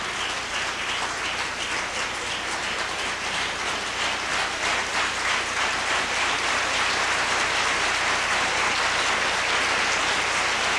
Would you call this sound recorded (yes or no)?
yes